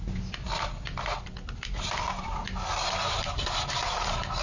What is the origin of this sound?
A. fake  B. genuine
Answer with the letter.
B